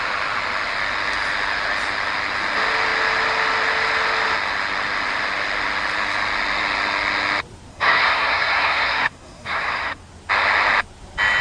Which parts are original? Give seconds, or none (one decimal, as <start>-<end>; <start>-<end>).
0.0-7.7; 10.0-11.4